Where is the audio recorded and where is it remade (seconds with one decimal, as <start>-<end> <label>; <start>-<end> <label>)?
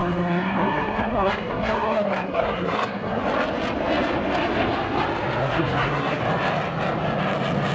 0.0-3.2 remade; 3.2-5.4 recorded; 5.4-6.2 remade; 6.2-7.7 recorded